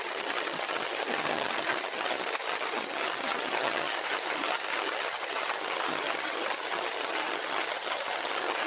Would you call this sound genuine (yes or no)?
no